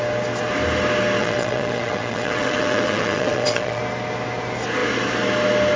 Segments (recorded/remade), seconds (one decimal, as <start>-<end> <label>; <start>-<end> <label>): 0.0-1.2 recorded; 1.2-3.8 remade; 3.8-5.8 recorded